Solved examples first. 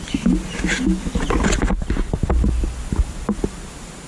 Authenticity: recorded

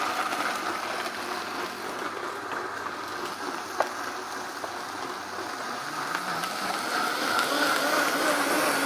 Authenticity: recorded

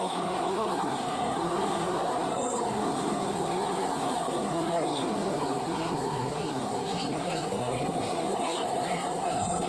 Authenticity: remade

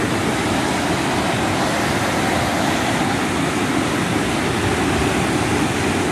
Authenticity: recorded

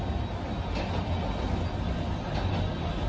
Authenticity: recorded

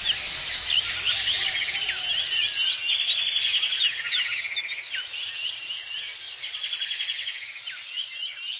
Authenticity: recorded